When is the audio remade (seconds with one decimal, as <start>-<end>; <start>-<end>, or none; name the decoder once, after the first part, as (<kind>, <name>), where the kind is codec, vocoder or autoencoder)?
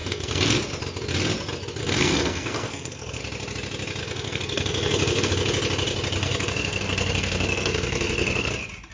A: 0.0-0.6 (codec, SNAC); 1.8-3.2; 4.0-5.3; 6.2-8.5